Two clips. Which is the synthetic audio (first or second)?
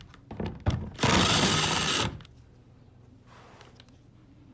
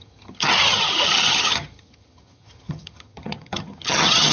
second